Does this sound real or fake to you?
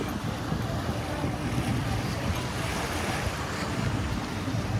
real